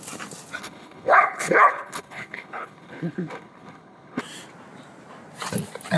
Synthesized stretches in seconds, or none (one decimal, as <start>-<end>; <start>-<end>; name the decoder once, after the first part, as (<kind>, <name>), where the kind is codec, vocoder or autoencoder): 0.6-4.2 (codec, HILCodec)